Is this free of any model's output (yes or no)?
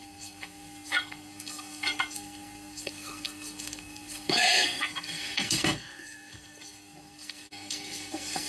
no